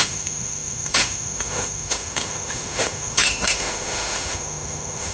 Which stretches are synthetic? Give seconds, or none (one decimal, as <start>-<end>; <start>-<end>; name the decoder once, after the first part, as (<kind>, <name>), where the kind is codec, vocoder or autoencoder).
0.0-5.1 (autoencoder, DAC-VAE)